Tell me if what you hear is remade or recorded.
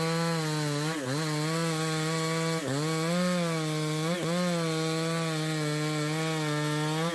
recorded